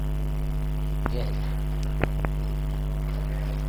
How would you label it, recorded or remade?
recorded